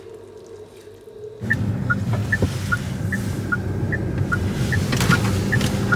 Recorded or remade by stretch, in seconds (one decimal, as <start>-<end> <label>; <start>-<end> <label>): 0.0-6.0 recorded